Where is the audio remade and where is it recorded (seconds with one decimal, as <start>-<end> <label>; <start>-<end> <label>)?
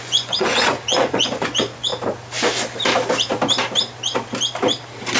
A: 0.0-1.9 remade; 1.9-5.2 recorded